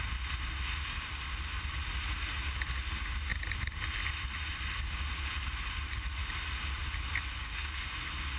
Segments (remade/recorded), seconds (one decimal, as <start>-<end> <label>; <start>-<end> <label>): 0.0-7.4 recorded; 7.4-7.9 remade; 7.9-8.4 recorded